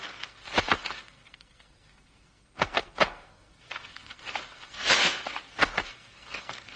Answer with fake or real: fake